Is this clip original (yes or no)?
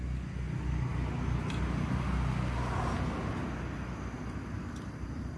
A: yes